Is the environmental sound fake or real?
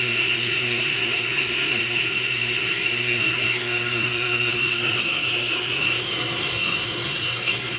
fake